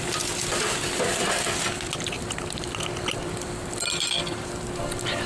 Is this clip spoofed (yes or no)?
no